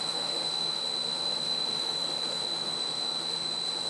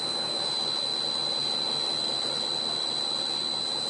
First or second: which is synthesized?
first